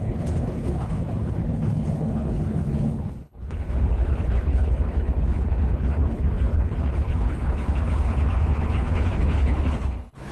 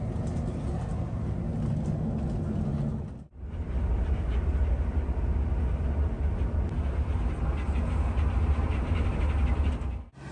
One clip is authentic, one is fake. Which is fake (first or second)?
first